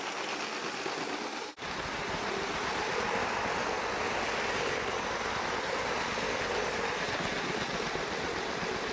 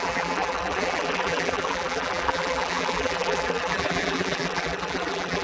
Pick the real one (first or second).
first